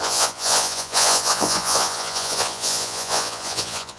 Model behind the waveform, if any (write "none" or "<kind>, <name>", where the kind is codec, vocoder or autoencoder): vocoder, Vocos